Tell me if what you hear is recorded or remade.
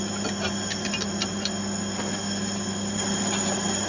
recorded